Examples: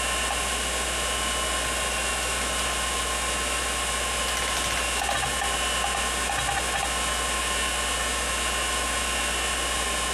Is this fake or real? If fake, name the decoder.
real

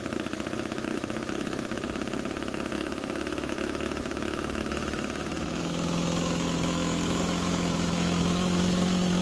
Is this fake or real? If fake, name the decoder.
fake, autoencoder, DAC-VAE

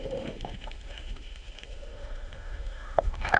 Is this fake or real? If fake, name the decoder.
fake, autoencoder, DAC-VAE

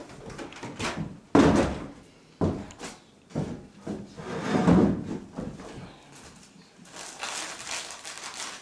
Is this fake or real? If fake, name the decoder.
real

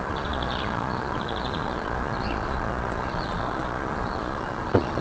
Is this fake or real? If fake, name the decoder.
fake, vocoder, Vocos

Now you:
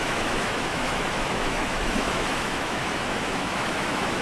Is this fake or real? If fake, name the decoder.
fake, autoencoder, DAC-VAE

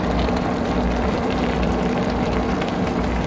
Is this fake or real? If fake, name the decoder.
fake, vocoder, BigVGAN v2